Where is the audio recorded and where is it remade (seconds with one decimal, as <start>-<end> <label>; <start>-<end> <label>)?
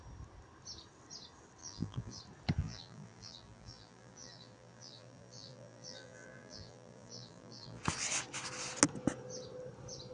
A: 0.0-1.6 recorded; 1.6-2.2 remade; 2.2-2.6 recorded; 2.6-7.8 remade; 7.8-10.1 recorded